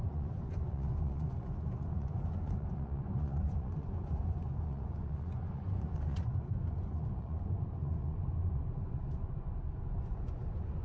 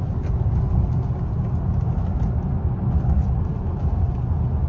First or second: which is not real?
first